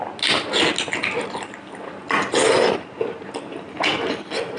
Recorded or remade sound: recorded